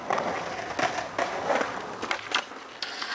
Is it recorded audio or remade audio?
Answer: recorded